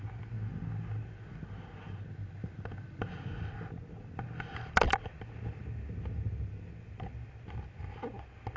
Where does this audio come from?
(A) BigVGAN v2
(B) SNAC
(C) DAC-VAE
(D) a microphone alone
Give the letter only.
D